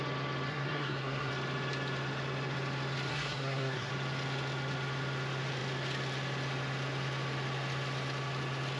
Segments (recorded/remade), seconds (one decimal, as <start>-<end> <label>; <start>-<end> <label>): 0.0-0.5 recorded; 0.5-1.3 remade; 1.3-3.1 recorded; 3.1-3.9 remade; 3.9-8.8 recorded